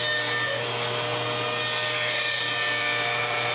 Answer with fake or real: real